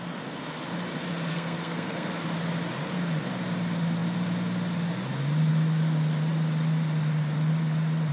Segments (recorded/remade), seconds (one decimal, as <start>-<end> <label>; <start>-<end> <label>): 0.0-1.3 recorded; 1.3-2.1 remade; 2.1-8.1 recorded